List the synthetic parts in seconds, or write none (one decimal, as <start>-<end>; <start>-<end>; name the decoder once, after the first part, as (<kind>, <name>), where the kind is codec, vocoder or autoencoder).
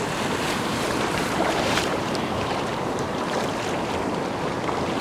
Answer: 0.4-3.4 (vocoder, BigVGAN v2)